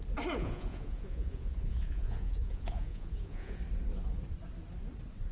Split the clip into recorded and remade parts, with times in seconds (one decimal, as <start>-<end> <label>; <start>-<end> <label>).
0.0-0.4 recorded; 0.4-3.6 remade; 3.6-5.3 recorded